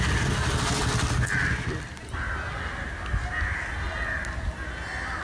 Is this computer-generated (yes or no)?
no